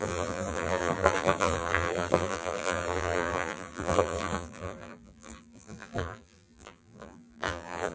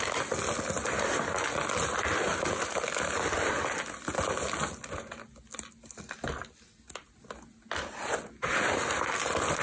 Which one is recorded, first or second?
second